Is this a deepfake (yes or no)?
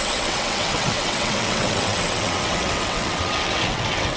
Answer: yes